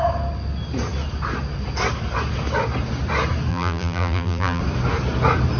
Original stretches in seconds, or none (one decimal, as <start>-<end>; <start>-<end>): 0.0-3.5; 4.6-5.6